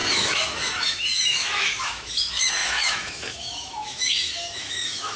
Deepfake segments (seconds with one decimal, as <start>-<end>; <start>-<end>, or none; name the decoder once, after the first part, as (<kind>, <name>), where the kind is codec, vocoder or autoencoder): 0.0-5.2 (autoencoder, DAC-VAE)